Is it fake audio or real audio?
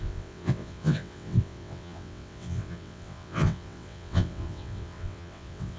fake